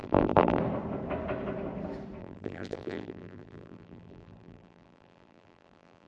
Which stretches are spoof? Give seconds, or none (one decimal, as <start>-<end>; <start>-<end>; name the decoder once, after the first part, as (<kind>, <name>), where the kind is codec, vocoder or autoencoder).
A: 0.0-0.6 (vocoder, BigVGAN v2); 2.2-6.1